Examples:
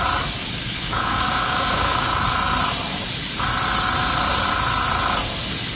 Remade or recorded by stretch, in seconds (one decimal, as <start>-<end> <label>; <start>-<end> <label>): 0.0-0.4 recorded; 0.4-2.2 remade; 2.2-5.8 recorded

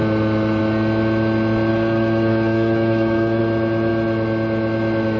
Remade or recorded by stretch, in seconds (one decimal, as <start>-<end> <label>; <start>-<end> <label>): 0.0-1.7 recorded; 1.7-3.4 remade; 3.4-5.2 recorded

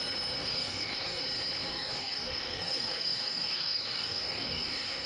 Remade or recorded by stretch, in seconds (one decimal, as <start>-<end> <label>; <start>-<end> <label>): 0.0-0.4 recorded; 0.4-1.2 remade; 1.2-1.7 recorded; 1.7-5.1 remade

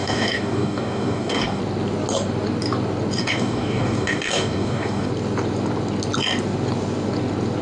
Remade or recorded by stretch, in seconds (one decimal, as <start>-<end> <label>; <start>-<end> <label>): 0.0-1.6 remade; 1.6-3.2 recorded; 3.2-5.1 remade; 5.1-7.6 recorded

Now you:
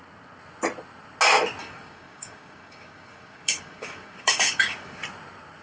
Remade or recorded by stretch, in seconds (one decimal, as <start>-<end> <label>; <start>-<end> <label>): 0.0-1.6 recorded; 1.6-5.0 remade; 5.0-5.6 recorded

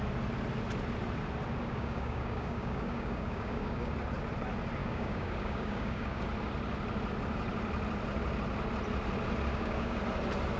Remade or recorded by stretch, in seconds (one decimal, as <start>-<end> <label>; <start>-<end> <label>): 0.0-1.6 recorded; 1.6-3.9 remade; 3.9-4.8 recorded; 4.8-6.2 remade; 6.2-9.5 recorded; 9.5-10.0 remade; 10.0-10.6 recorded

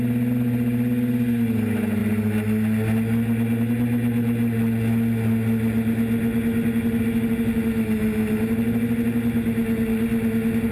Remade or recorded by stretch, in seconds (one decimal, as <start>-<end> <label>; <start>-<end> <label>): 0.0-10.7 recorded